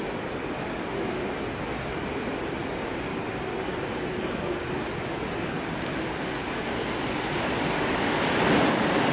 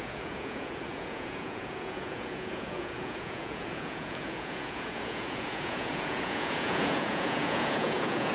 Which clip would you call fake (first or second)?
second